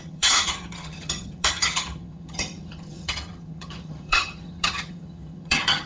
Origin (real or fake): fake